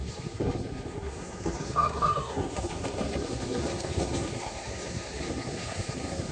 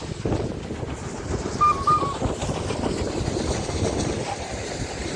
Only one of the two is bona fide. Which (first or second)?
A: second